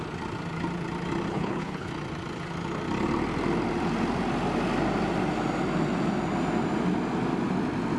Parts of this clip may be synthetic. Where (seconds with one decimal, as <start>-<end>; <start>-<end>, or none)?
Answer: 1.3-1.9